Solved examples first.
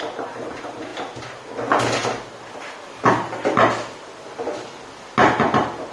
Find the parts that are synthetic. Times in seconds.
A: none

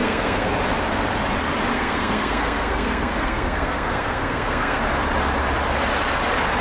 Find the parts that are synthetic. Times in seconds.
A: 0.0-0.5 (codec, SNAC); 1.7-4.8